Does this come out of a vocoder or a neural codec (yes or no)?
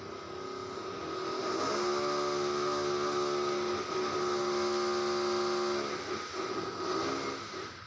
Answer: no